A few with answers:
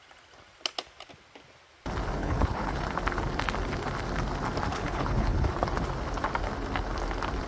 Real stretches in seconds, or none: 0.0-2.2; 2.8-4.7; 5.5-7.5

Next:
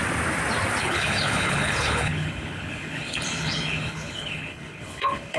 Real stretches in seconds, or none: 0.0-0.8

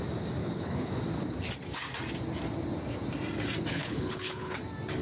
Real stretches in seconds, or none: 0.0-0.4; 0.9-3.7; 4.6-5.0

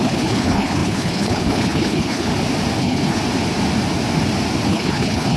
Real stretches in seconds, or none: 2.3-2.8; 3.2-4.7

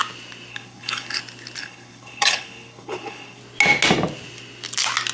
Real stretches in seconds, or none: 0.0-0.5; 1.2-1.6; 3.4-5.1

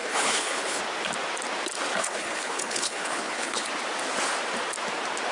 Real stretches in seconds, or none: 0.8-2.0; 3.7-5.3

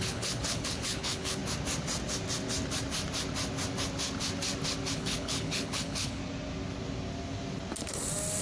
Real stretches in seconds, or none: 1.4-4.9; 6.2-8.4

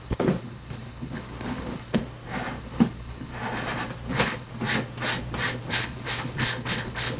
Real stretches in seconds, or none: 2.0-2.6; 3.3-4.1; 4.5-5.7